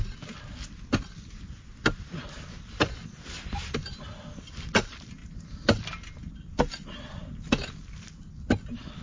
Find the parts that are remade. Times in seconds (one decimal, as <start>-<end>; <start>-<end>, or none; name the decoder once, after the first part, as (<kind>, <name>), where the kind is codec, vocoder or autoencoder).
none